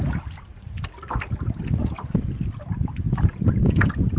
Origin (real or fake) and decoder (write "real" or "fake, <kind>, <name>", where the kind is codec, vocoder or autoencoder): real